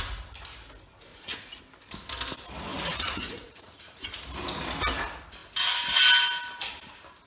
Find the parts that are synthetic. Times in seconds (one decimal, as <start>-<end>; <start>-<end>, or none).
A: 1.1-1.6; 2.7-4.1